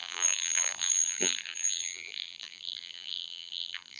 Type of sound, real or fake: fake